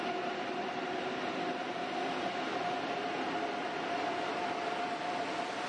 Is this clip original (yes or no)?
yes